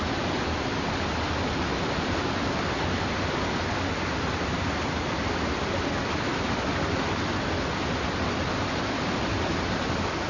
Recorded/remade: recorded